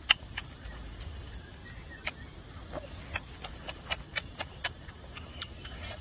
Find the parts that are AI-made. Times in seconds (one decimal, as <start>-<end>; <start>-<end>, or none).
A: 0.0-1.6; 3.5-6.0